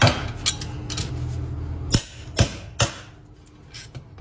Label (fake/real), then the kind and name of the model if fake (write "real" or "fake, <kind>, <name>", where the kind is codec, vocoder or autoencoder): real